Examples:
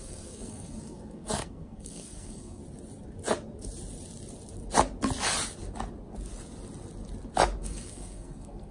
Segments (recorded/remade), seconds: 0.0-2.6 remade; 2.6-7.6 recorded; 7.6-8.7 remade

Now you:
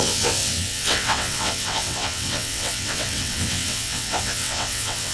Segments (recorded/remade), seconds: 0.0-5.1 remade

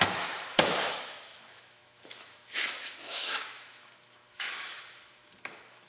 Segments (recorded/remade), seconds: 0.0-5.9 remade

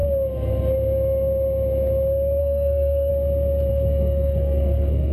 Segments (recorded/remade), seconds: 0.0-2.4 recorded; 2.4-3.1 remade; 3.1-3.7 recorded; 3.7-5.1 remade

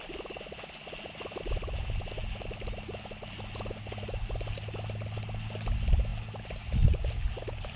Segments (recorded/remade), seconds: 0.0-7.8 recorded

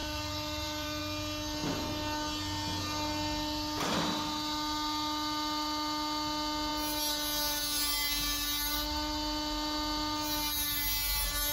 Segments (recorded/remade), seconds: 0.0-1.0 remade; 1.0-11.5 recorded

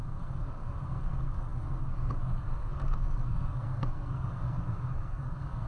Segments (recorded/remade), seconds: 0.0-5.7 remade

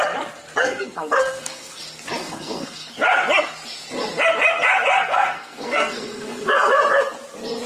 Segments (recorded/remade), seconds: 0.0-0.6 recorded; 0.6-1.8 remade; 1.8-2.2 recorded; 2.2-2.9 remade; 2.9-5.1 recorded; 5.1-6.8 remade; 6.8-7.7 recorded